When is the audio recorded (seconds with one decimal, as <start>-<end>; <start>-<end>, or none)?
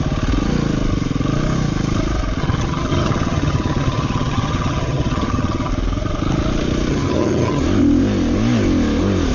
0.0-2.4; 5.7-6.9; 7.6-9.3